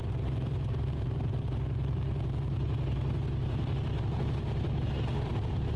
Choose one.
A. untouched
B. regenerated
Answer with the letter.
B